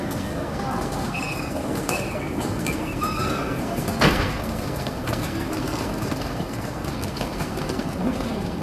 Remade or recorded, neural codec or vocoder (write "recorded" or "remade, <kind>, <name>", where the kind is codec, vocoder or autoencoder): remade, codec, SNAC